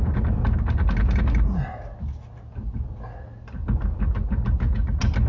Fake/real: real